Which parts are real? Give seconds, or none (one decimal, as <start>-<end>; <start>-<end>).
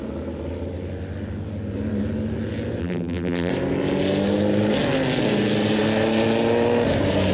0.0-2.8; 3.5-7.3